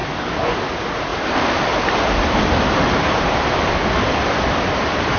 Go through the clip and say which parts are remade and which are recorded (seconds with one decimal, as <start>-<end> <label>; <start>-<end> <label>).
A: 0.0-1.1 recorded; 1.1-3.7 remade; 3.7-5.2 recorded